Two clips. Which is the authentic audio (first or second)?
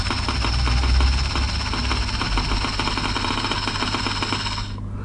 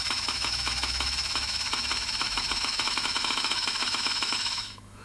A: first